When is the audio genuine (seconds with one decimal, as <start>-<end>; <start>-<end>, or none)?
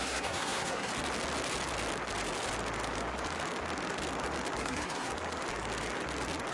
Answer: 0.9-4.6; 5.1-6.5